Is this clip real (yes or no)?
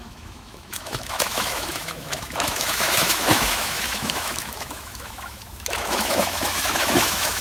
no